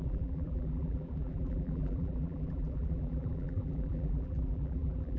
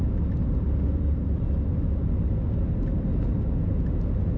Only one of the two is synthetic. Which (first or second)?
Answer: first